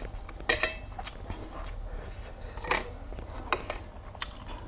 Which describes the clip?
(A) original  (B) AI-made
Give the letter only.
A